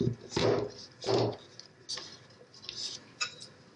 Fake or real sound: real